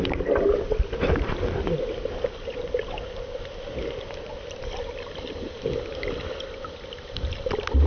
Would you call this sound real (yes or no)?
yes